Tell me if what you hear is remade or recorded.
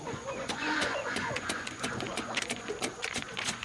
remade